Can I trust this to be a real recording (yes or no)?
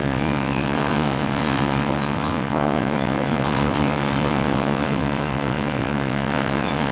no